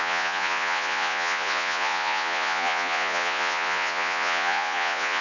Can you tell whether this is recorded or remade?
remade